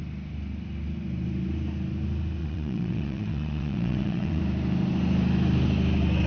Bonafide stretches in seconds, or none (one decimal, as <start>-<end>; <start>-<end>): 0.0-2.4; 4.4-6.3